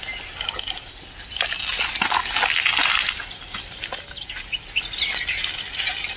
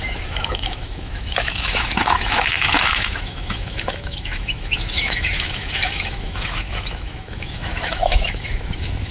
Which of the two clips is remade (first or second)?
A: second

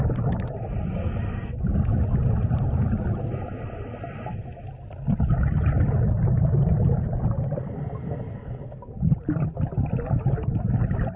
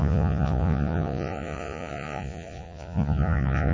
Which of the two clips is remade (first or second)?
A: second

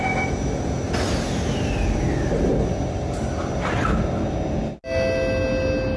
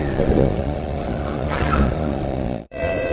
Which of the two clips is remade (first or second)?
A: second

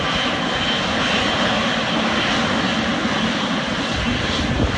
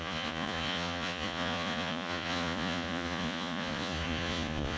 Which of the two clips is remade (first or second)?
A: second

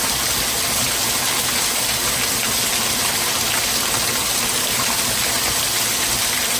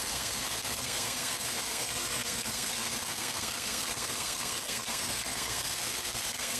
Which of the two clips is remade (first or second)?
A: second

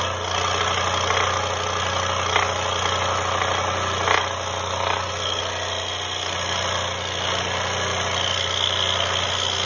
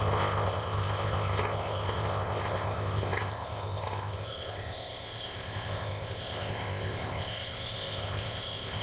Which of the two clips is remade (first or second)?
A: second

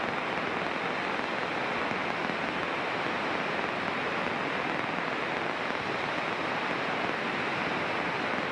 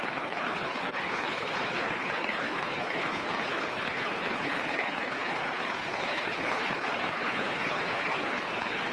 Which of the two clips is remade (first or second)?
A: second